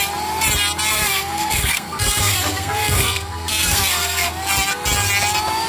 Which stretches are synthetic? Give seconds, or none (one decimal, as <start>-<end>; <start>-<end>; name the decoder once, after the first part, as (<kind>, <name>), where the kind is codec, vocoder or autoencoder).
0.9-4.3 (codec, SNAC)